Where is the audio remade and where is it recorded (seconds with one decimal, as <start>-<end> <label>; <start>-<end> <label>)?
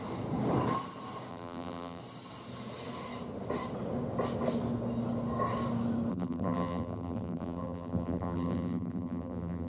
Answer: 0.0-1.3 recorded; 1.3-2.0 remade; 2.0-6.1 recorded; 6.1-9.7 remade